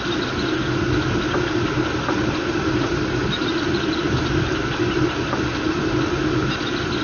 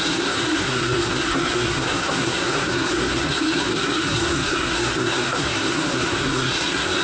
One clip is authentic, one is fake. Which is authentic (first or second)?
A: first